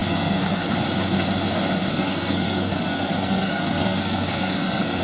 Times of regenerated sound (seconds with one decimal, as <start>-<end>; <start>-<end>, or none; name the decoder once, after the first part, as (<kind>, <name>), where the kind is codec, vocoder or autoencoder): 0.0-0.7 (codec, SNAC); 1.9-5.0